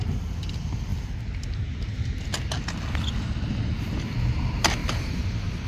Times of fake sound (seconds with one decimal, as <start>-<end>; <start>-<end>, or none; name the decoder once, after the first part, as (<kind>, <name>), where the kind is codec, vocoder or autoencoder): 4.8-5.7 (vocoder, BigVGAN v2)